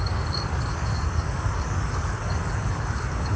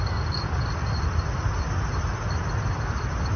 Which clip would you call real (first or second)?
second